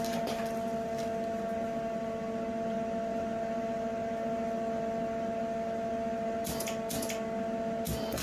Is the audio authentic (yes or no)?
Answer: yes